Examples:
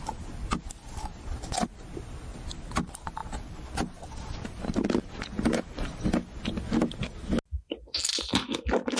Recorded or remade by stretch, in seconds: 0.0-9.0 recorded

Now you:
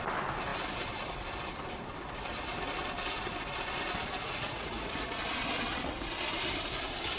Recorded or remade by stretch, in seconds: 0.0-4.2 recorded; 4.2-5.2 remade; 5.2-7.2 recorded

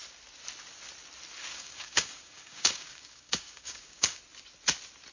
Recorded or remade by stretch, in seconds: 0.0-1.5 recorded; 1.5-4.2 remade; 4.2-5.1 recorded